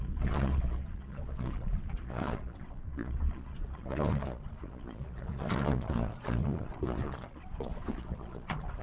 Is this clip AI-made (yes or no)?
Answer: yes